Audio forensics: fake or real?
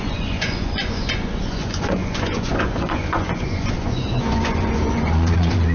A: fake